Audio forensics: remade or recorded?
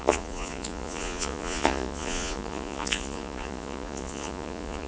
remade